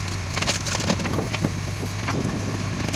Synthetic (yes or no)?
no